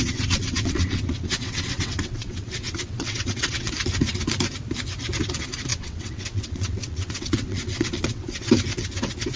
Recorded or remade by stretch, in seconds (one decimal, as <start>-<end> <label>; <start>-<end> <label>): 0.0-3.7 remade; 3.7-5.7 recorded; 5.7-8.5 remade; 8.5-9.4 recorded

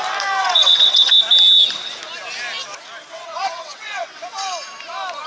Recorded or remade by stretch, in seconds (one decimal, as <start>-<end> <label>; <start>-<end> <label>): 0.0-0.4 recorded; 0.4-1.1 remade; 1.1-3.1 recorded; 3.1-4.1 remade; 4.1-5.3 recorded

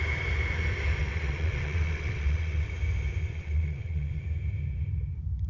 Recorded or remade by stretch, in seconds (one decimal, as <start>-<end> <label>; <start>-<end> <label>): 0.0-1.0 recorded; 1.0-2.7 remade; 2.7-3.2 recorded; 3.2-4.2 remade; 4.2-5.5 recorded

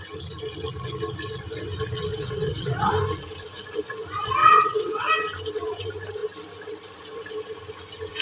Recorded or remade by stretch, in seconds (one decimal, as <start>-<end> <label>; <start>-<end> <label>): 0.0-2.1 recorded; 2.1-2.9 remade; 2.9-4.4 recorded; 4.4-5.0 remade; 5.0-8.2 recorded